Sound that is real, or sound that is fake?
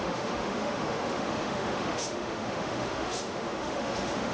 fake